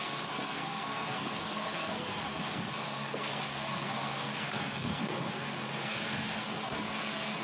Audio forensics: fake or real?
fake